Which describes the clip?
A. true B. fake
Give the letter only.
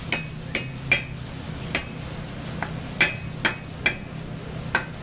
A